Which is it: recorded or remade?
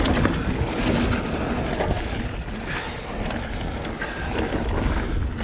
recorded